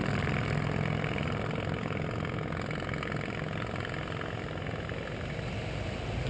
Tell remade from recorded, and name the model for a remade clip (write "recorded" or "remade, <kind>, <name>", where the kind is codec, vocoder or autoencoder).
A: recorded